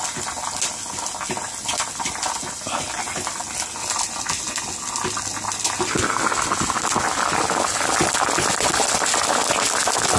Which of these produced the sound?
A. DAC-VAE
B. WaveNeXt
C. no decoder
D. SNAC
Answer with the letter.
C